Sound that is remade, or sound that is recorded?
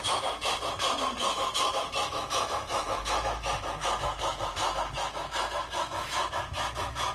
remade